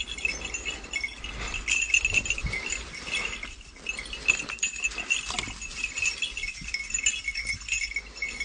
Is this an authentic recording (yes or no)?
yes